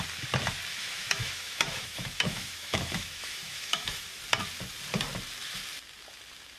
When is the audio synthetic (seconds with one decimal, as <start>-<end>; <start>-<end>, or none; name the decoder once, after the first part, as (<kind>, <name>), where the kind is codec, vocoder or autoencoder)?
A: 0.7-4.2 (autoencoder, DAC-VAE)